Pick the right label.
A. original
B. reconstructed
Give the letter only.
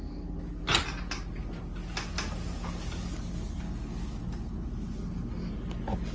A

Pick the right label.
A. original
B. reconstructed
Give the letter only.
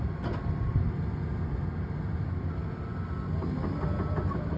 A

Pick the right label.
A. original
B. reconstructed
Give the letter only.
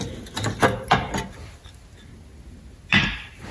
A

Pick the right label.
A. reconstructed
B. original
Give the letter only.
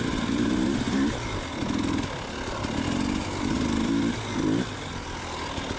B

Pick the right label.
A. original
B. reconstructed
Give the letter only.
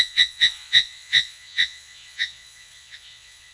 B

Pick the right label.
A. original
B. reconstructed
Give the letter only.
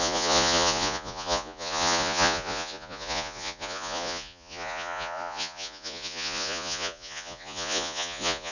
B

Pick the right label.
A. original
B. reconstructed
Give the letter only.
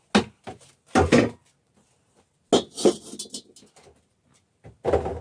A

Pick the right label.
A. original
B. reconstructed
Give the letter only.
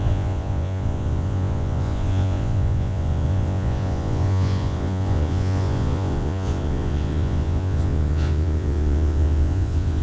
B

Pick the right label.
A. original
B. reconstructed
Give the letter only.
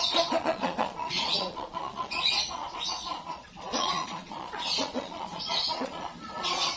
B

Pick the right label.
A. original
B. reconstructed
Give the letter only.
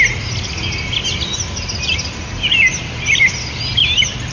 A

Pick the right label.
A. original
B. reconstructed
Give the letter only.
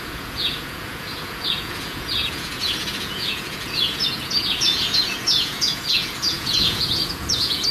B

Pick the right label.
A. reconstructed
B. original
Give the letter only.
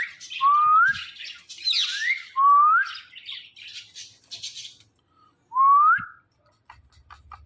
B